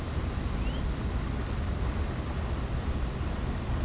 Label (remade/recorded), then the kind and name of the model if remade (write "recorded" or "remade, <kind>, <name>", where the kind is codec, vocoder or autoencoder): recorded